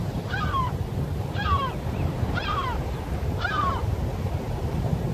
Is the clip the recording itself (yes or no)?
no